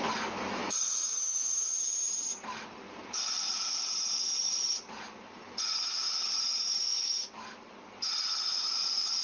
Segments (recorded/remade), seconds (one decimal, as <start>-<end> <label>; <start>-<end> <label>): 0.0-0.6 recorded; 0.6-2.1 remade; 2.1-6.8 recorded; 6.8-7.3 remade; 7.3-9.2 recorded